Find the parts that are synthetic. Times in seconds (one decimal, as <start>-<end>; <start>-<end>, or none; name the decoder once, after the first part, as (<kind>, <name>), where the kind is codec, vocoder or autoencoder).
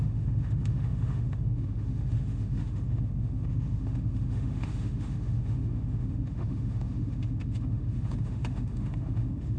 0.0-9.6 (autoencoder, DAC-VAE)